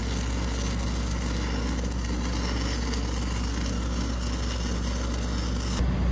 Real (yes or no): yes